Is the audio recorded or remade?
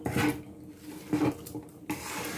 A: recorded